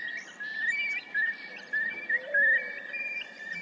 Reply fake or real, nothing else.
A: real